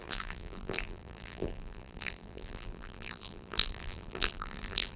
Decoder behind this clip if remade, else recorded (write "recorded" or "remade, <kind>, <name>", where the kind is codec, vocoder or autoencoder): remade, vocoder, BigVGAN v2